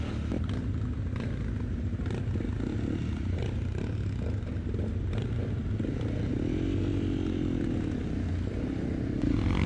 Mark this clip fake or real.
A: real